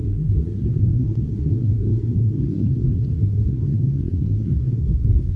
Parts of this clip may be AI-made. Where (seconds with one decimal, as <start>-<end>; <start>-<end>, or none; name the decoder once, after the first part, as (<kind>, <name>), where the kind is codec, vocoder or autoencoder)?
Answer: 0.0-5.4 (codec, SNAC)